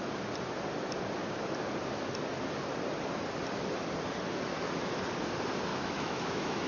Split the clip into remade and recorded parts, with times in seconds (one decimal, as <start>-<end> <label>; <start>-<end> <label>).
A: 0.0-5.7 recorded; 5.7-6.7 remade